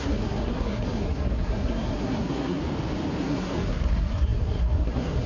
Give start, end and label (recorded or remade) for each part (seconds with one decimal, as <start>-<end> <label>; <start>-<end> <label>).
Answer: 0.0-2.6 remade; 2.6-3.2 recorded; 3.2-5.3 remade